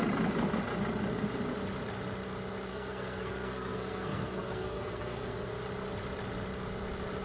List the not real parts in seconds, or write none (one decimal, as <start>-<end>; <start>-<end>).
2.7-5.5

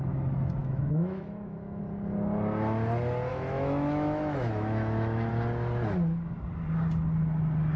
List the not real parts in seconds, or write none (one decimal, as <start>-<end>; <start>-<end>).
0.6-1.8; 3.3-5.3

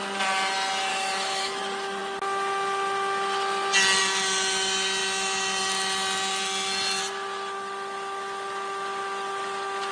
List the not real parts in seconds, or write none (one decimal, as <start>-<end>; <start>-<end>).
0.9-1.6

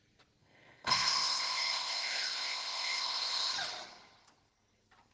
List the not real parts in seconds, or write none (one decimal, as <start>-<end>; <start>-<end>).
0.4-3.5

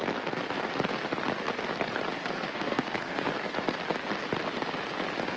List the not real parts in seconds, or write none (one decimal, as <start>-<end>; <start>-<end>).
2.2-3.3

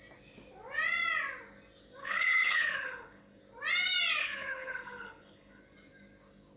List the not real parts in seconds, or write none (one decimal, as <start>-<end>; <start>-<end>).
2.0-3.4; 4.2-5.6